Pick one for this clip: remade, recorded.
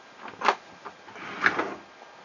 recorded